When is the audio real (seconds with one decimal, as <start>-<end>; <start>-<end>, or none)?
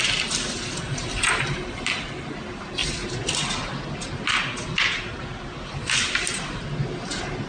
0.0-7.5